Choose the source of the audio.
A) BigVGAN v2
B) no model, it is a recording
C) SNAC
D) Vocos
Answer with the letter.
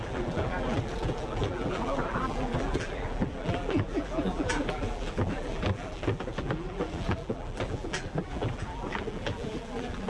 A